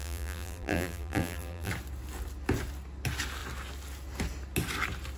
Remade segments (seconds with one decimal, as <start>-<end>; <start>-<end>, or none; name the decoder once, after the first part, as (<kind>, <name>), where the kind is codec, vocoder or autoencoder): 0.0-1.7 (vocoder, BigVGAN v2)